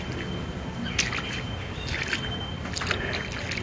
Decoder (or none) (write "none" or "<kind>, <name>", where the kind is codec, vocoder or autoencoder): none